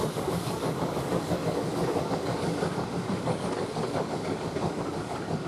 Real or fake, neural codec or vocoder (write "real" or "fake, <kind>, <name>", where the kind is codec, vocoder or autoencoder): fake, codec, DAC